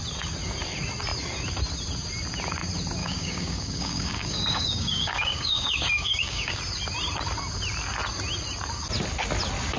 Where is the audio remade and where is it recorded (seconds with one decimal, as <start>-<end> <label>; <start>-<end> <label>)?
0.0-3.0 recorded; 3.0-6.6 remade; 6.6-9.8 recorded